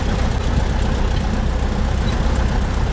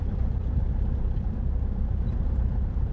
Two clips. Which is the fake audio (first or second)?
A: second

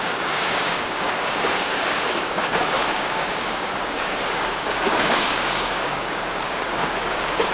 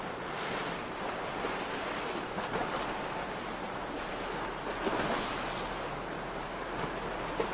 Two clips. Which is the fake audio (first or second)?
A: first